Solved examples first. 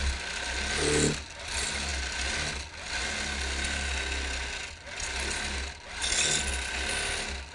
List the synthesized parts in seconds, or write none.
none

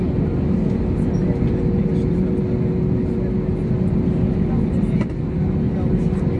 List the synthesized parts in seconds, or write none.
none

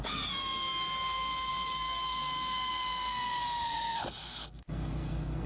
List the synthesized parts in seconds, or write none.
0.0-5.5 (codec, SNAC)

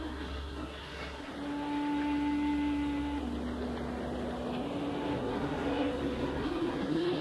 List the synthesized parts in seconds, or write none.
0.0-1.3 (codec, SNAC); 5.2-7.2

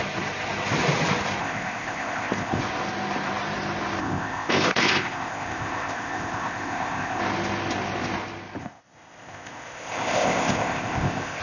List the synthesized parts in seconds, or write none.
1.4-2.6 (codec, ZipCodec); 4.0-7.2; 8.6-11.4

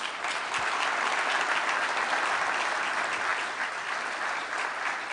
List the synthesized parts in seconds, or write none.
0.0-3.3 (vocoder, BigVGAN v2); 4.4-5.1